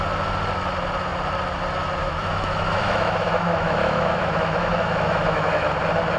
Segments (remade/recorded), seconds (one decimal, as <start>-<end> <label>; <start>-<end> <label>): 0.0-2.0 recorded; 2.0-5.7 remade; 5.7-6.2 recorded